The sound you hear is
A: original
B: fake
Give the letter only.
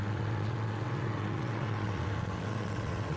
B